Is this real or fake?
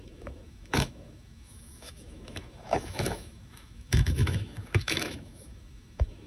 fake